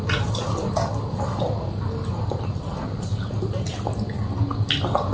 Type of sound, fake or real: real